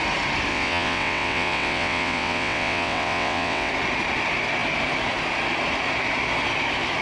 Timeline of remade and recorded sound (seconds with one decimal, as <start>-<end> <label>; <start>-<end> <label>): 0.0-0.5 recorded; 0.5-3.7 remade; 3.7-7.0 recorded